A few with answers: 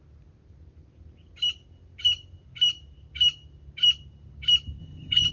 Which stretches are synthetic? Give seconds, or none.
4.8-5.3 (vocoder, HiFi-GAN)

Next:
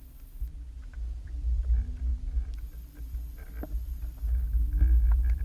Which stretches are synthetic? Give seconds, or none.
none

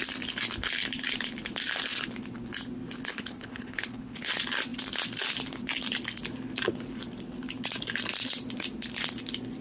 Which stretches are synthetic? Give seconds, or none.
3.1-4.3 (codec, HILCodec)